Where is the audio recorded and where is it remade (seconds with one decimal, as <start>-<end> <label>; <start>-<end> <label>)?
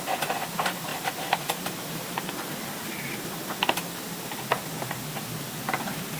0.0-0.9 recorded; 0.9-2.7 remade; 2.7-6.2 recorded